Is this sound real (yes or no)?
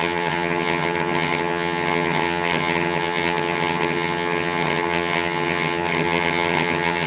no